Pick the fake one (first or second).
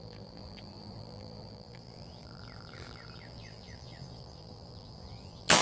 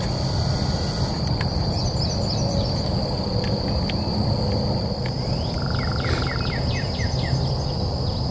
first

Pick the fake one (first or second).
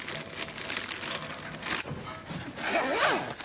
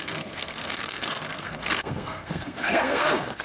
second